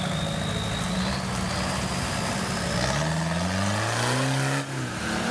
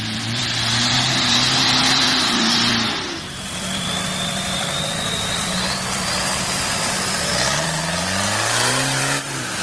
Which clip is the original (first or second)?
first